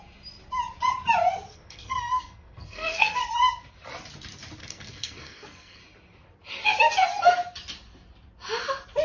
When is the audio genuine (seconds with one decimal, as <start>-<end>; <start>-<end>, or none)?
0.0-1.5; 3.2-4.6; 5.8-9.0